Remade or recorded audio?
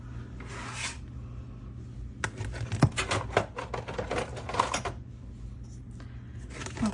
recorded